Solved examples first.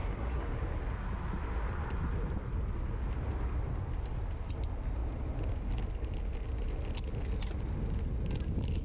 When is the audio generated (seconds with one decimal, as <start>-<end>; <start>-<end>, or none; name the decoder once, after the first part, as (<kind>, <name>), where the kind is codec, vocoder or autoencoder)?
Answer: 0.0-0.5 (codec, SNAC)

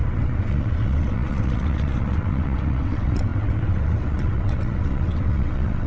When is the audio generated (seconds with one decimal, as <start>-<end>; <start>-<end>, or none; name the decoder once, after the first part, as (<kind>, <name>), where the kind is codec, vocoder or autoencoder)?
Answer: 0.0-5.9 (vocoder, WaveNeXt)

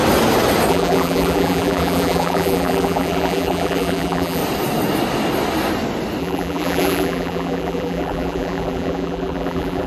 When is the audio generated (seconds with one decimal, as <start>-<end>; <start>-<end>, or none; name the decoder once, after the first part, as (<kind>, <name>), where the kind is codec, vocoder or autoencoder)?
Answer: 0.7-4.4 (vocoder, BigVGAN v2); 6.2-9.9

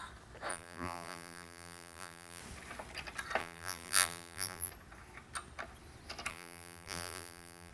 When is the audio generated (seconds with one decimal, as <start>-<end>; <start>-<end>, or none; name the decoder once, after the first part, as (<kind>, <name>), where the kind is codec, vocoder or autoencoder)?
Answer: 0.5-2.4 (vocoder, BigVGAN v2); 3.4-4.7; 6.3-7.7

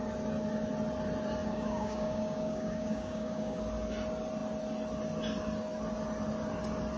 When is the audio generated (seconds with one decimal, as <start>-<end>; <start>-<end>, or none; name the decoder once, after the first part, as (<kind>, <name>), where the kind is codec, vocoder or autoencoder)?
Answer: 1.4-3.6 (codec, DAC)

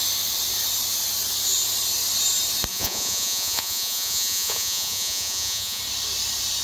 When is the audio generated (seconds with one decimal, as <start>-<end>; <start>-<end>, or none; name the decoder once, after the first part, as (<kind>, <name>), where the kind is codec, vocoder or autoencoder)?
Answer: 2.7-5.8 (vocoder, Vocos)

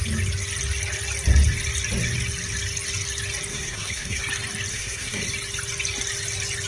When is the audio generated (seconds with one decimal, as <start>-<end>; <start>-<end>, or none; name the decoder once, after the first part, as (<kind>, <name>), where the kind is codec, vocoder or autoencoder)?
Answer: 3.5-4.2 (codec, SNAC); 4.7-5.3